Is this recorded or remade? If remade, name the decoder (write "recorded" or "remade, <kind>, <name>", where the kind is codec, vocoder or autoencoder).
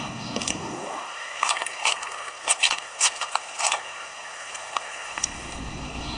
remade, codec, SNAC